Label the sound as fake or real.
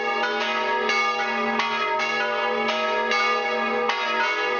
real